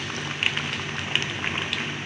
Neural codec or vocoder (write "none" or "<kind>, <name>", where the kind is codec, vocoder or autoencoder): none